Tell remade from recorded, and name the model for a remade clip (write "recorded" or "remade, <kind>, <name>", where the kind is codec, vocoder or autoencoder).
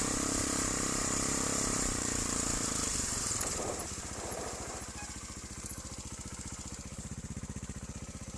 remade, vocoder, BigVGAN v2